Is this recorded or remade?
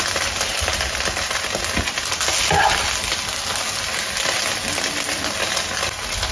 recorded